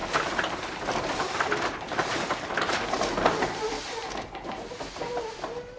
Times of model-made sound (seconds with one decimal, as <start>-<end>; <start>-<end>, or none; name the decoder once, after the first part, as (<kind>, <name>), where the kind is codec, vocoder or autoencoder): 0.0-2.5 (vocoder, BigVGAN v2); 4.0-5.3